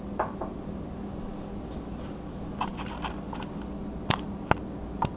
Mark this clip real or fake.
real